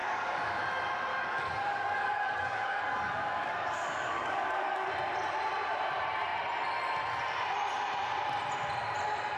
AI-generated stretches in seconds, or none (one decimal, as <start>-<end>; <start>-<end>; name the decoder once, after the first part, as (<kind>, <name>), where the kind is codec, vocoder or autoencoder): 0.0-0.6 (codec, DAC); 1.1-4.9